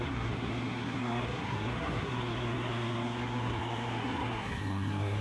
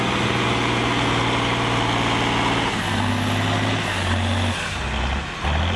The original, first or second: second